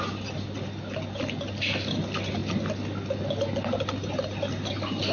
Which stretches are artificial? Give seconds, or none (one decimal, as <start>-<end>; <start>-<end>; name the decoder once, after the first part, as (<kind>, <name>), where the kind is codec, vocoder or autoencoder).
0.0-2.4 (vocoder, BigVGAN v2); 3.8-5.1